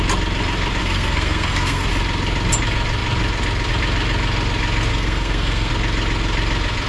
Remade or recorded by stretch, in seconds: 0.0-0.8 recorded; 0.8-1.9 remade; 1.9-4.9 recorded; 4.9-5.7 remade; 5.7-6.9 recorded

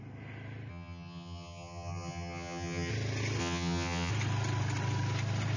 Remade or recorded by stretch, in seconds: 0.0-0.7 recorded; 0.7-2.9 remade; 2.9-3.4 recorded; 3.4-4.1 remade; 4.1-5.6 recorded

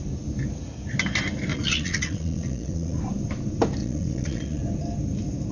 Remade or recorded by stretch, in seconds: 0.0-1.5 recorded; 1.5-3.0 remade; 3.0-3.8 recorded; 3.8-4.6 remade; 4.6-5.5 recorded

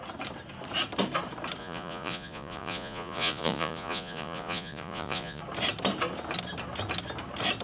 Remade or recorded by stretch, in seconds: 0.0-1.6 recorded; 1.6-5.4 remade; 5.4-7.6 recorded

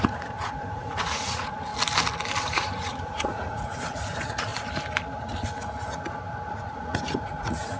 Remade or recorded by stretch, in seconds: 0.0-1.7 remade; 1.7-2.4 recorded; 2.4-4.5 remade; 4.5-6.5 recorded; 6.5-7.8 remade